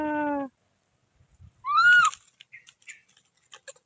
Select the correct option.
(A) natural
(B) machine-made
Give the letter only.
A